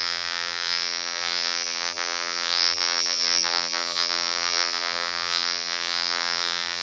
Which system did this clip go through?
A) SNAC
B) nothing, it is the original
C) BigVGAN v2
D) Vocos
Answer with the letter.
C